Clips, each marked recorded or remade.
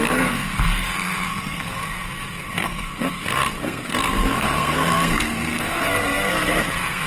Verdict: remade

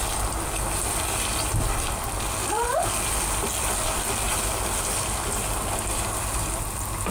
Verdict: recorded